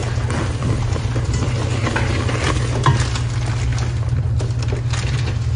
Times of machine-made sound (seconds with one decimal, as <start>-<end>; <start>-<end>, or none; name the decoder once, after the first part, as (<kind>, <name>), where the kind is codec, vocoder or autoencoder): 0.0-1.5 (vocoder, BigVGAN v2)